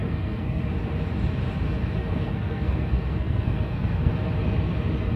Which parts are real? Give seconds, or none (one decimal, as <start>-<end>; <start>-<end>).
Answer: 0.6-2.0; 4.1-5.2